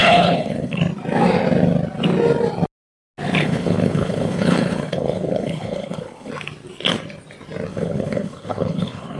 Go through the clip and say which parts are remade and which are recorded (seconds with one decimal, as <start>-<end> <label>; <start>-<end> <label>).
0.0-0.8 remade; 0.8-3.4 recorded; 3.4-6.3 remade; 6.3-7.7 recorded; 7.7-9.2 remade